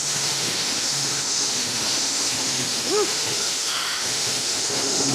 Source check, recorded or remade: remade